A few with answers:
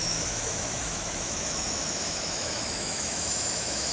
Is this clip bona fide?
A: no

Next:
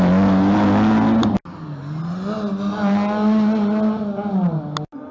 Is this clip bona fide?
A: yes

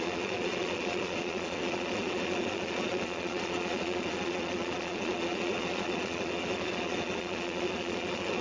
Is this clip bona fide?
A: no